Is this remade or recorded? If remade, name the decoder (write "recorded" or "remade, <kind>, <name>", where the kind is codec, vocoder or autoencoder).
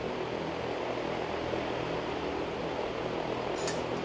recorded